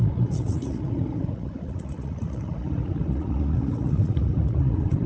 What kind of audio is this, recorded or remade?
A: remade